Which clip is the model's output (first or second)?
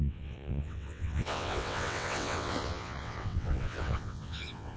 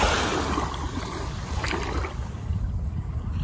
first